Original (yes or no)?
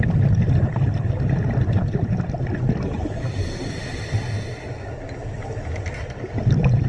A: yes